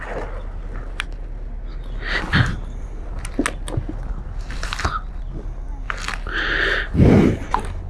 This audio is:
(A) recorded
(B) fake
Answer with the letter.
A